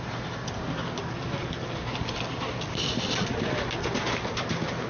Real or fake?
real